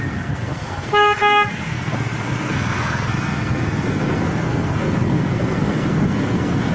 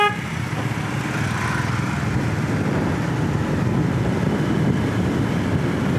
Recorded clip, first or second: second